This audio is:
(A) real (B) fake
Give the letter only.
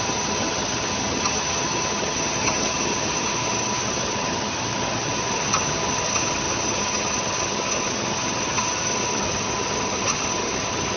B